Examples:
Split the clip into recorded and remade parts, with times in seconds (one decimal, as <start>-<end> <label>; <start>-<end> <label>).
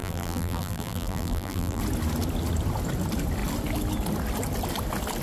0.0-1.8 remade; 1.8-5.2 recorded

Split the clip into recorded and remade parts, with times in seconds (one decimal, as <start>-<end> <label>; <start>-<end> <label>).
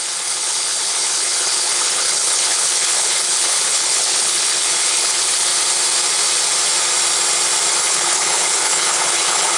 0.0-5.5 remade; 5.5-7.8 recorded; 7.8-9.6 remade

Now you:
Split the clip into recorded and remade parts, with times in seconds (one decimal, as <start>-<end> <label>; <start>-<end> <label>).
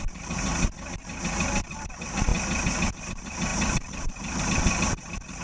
0.0-0.5 remade; 0.5-1.8 recorded; 1.8-2.3 remade; 2.3-3.0 recorded; 3.0-5.4 remade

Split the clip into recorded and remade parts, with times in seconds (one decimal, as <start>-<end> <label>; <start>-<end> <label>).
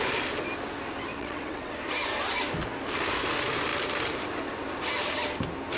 0.0-1.1 recorded; 1.1-1.7 remade; 1.7-5.8 recorded